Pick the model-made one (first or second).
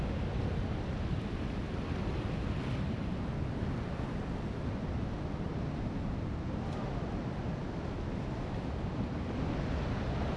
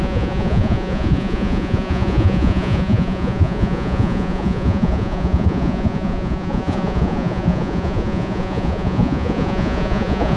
second